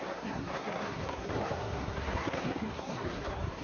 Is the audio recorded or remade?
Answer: remade